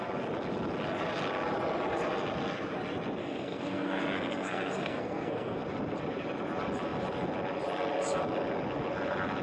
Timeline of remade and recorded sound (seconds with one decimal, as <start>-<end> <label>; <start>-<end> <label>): 0.0-3.2 recorded; 3.2-5.6 remade; 5.6-9.4 recorded